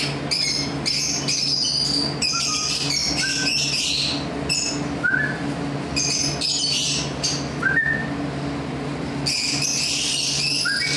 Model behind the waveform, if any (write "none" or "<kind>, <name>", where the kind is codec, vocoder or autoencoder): none